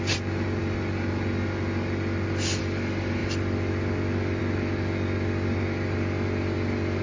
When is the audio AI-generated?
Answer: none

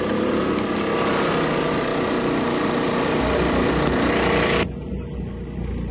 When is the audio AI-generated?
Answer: none

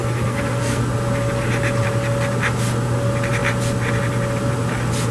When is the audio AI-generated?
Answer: 0.0-0.8

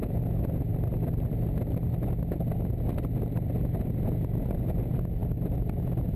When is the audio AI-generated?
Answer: 0.0-0.7; 4.0-5.2; 5.8-6.2

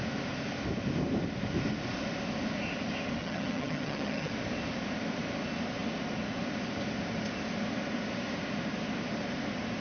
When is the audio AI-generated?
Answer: 3.2-4.3

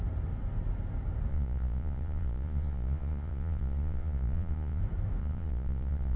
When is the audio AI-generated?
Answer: 1.3-4.8; 5.2-6.2